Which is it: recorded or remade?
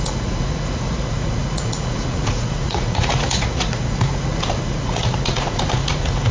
remade